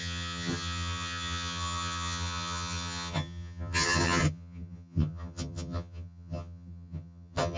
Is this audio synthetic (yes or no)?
yes